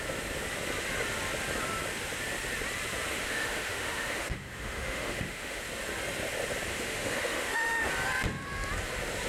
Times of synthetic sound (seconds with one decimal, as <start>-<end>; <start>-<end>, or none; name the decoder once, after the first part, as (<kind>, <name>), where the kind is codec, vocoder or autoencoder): 3.1-5.6 (autoencoder, DAC-VAE); 6.7-7.9